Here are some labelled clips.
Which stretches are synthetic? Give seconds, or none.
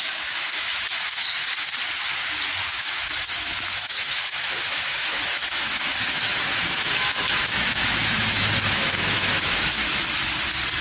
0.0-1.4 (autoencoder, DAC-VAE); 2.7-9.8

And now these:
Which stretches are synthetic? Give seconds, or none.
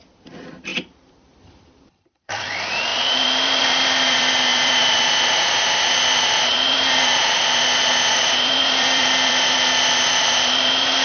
0.0-11.0 (vocoder, BigVGAN v2)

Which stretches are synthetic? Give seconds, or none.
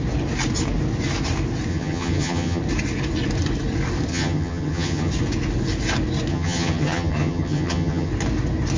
1.7-2.6 (vocoder, HiFi-GAN); 4.1-5.1; 6.3-8.1